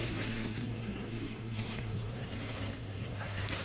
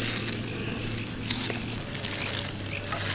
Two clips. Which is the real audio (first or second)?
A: second